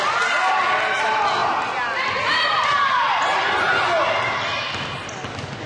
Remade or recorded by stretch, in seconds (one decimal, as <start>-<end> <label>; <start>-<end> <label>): 0.0-5.7 recorded